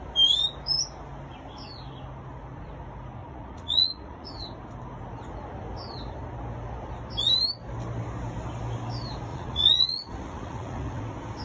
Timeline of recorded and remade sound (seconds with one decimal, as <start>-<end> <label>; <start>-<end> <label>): 0.0-3.2 recorded; 3.2-4.3 remade; 4.3-9.3 recorded; 9.3-11.0 remade; 11.0-11.4 recorded